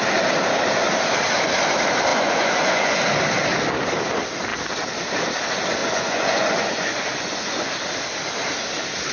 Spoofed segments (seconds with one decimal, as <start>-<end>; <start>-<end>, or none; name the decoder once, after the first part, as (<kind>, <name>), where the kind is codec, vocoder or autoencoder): 2.1-3.0 (vocoder, Vocos); 5.8-7.7